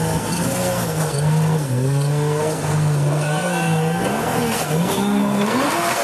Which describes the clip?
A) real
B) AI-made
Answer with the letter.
B